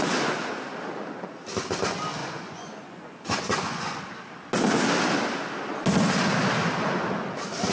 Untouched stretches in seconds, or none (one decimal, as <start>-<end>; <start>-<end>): 0.0-2.2; 4.0-7.7